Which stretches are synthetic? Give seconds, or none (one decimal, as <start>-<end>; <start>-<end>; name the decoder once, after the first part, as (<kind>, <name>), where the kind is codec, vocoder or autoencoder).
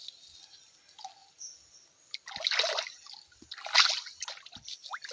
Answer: none